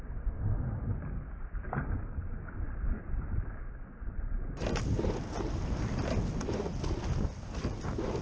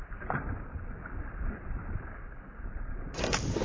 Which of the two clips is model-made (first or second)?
second